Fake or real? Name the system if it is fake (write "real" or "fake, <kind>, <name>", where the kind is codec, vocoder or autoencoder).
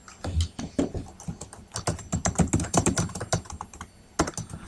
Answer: real